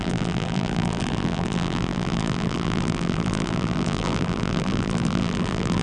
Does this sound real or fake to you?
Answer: fake